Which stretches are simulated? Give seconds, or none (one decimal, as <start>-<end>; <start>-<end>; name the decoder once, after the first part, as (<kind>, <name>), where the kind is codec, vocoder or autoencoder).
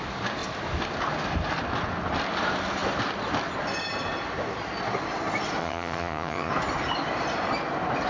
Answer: 5.6-6.5 (vocoder, HiFi-GAN)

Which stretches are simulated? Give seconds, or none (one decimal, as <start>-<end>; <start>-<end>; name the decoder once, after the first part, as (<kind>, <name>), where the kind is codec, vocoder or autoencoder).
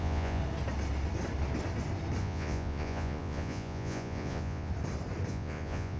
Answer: 0.0-0.4 (vocoder, Vocos); 2.2-4.7; 5.3-6.0